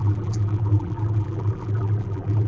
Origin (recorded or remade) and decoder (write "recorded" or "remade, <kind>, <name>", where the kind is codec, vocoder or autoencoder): remade, vocoder, BigVGAN v2